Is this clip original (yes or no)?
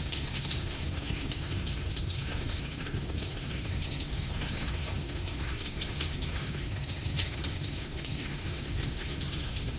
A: no